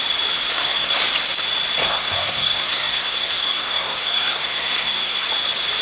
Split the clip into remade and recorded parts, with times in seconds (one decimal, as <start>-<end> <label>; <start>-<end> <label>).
0.0-0.5 recorded; 0.5-1.0 remade; 1.0-1.8 recorded; 1.8-5.3 remade; 5.3-5.8 recorded